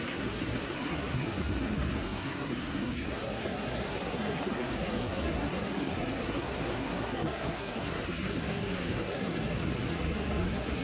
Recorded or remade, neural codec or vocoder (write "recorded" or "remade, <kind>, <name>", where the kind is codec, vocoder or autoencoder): remade, codec, SNAC